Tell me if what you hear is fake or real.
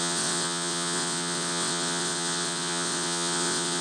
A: fake